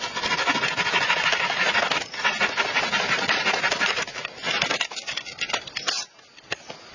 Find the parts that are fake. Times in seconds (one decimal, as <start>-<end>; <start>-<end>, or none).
none